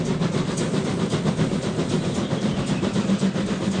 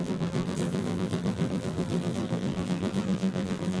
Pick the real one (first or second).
first